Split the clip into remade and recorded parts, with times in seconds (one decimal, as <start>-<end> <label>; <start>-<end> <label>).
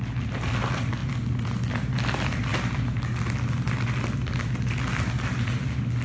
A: 0.0-6.0 recorded